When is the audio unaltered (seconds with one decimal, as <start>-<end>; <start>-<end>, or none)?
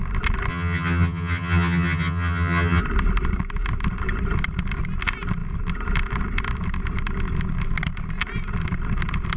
0.0-0.5; 2.8-9.4